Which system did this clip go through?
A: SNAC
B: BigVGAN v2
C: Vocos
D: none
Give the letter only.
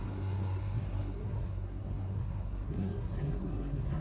A